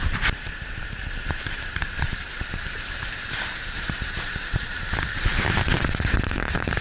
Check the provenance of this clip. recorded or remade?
remade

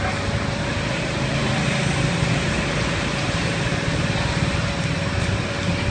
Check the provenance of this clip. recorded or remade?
remade